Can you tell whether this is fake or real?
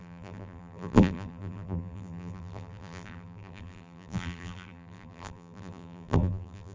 fake